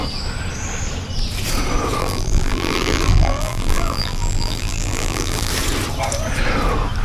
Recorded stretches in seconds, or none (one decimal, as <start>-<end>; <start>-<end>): 0.0-2.0; 5.5-7.0

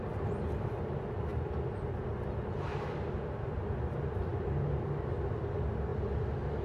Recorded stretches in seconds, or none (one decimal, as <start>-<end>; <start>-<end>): 1.3-3.5; 4.3-5.0; 5.9-6.6

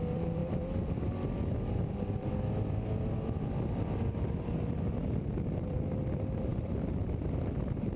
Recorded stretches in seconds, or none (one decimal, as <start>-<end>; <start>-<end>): 0.4-1.7

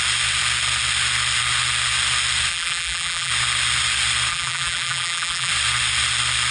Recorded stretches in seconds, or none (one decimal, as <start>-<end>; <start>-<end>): 0.0-2.5; 3.3-4.3; 5.5-6.5

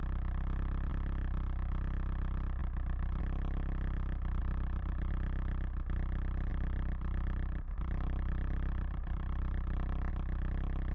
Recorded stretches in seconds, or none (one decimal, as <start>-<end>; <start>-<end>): 0.0-4.4; 5.1-6.5; 10.1-10.9

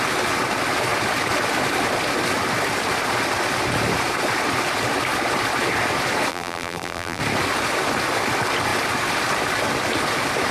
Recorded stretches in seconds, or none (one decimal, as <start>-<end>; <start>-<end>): 0.0-6.3; 7.2-10.5

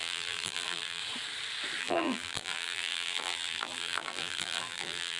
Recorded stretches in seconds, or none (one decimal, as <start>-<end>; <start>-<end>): 1.0-1.8

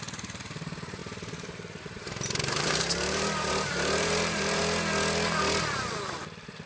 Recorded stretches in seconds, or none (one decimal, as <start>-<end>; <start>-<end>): 4.6-6.7